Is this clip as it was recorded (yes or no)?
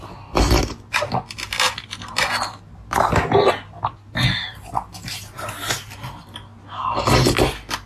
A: yes